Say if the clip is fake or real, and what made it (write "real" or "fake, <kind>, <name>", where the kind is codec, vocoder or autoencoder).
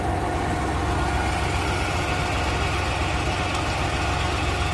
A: real